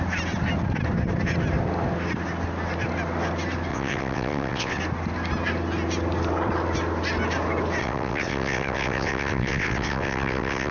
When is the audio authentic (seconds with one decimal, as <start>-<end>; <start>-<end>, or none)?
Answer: 0.0-3.7; 4.8-7.8